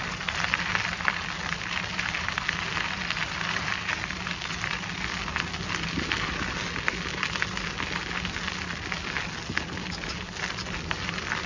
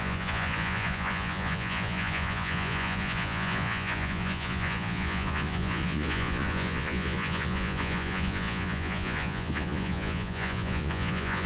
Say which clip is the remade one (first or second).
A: second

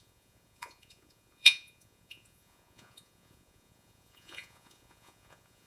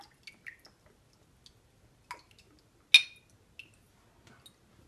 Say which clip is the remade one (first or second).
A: first